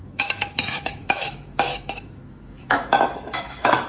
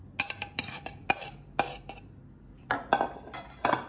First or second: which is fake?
first